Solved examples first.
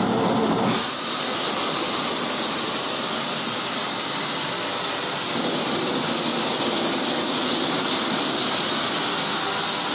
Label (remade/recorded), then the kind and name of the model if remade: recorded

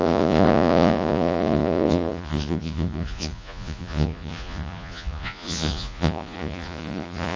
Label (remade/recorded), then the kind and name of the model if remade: remade, vocoder, Vocos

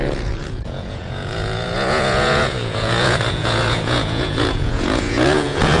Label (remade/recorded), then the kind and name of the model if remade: remade, vocoder, Vocos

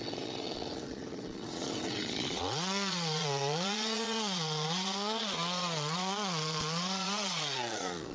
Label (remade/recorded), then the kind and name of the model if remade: remade, vocoder, Vocos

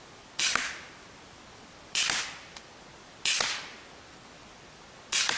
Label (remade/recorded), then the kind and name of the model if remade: recorded